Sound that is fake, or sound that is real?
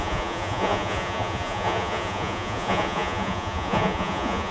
fake